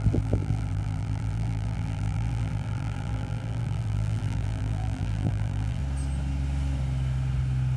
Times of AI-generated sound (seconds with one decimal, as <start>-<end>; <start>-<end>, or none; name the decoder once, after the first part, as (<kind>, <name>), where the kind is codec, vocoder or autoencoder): 0.0-5.8 (vocoder, BigVGAN v2)